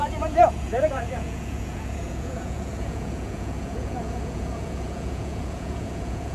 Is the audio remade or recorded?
remade